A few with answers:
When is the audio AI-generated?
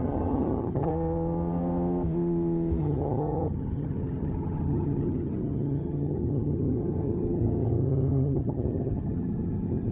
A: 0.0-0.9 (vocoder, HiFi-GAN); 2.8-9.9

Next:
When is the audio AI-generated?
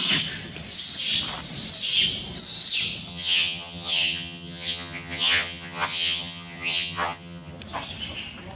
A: 3.1-7.6 (vocoder, HiFi-GAN)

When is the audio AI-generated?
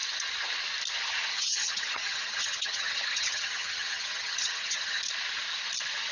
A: 1.3-5.0 (vocoder, HiFi-GAN)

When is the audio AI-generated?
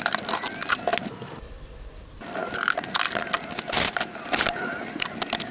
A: none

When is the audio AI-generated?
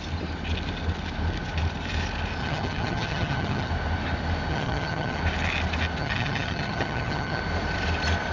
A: 2.4-3.7 (vocoder, HiFi-GAN); 4.5-5.2; 6.0-7.4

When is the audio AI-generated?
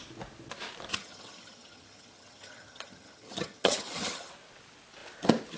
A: 0.9-4.3 (vocoder, HiFi-GAN)